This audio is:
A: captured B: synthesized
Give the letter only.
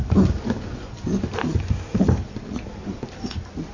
A